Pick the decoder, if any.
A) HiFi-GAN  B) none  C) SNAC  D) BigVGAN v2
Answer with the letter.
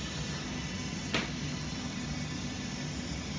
B